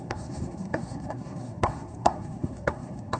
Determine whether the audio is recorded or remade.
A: remade